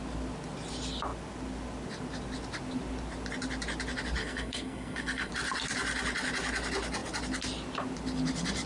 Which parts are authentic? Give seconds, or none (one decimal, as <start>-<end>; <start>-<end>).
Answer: 0.0-4.2; 5.3-8.7